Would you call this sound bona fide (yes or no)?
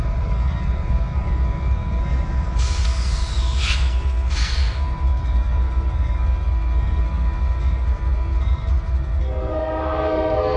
no